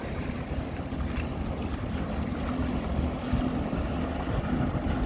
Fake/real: real